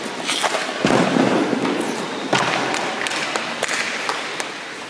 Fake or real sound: real